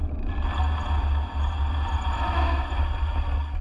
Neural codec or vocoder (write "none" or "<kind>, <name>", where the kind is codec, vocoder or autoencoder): none